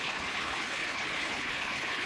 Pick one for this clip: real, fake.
fake